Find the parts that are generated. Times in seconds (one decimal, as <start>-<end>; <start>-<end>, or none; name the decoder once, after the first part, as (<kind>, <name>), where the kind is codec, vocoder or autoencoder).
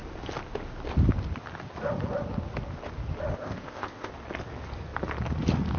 3.3-4.1 (codec, ZipCodec)